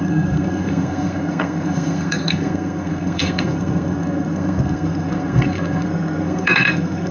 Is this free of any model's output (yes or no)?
no